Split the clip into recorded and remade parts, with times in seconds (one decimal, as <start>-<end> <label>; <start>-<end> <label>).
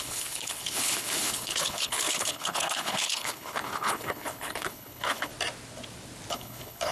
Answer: 0.0-5.3 remade; 5.3-6.3 recorded; 6.3-6.9 remade